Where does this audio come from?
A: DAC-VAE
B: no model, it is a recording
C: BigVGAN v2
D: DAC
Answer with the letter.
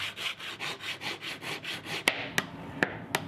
B